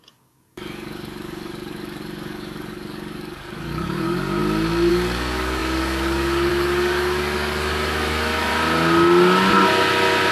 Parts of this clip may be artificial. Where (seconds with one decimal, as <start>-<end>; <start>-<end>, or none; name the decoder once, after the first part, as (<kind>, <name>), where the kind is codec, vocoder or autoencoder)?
0.0-4.4 (codec, DAC); 4.9-8.5